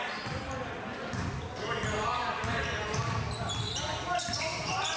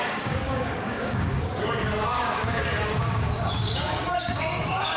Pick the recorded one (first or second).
first